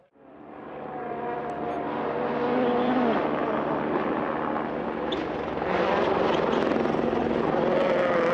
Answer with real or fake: real